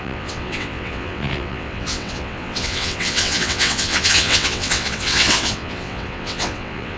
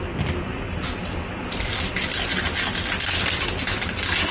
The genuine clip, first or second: second